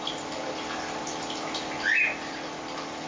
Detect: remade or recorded recorded